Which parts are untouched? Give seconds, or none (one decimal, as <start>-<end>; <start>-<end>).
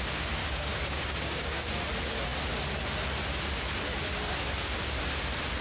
0.0-0.4; 1.7-5.6